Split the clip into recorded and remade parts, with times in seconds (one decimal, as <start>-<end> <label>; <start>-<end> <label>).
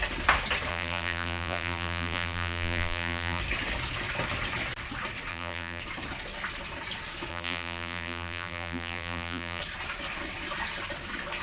0.0-0.7 recorded; 0.7-3.4 remade; 3.4-5.3 recorded; 5.3-5.8 remade; 5.8-7.3 recorded; 7.3-9.6 remade; 9.6-11.4 recorded